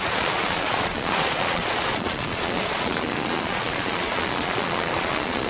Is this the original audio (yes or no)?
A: no